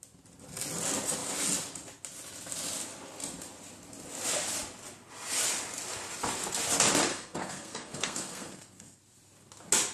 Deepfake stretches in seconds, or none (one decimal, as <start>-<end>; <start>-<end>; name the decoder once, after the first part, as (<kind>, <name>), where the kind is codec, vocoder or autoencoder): 7.1-9.0 (codec, SNAC)